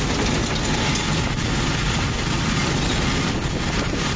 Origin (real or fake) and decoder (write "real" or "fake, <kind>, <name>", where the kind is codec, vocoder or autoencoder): real